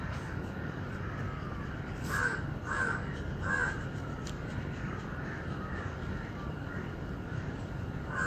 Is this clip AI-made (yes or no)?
yes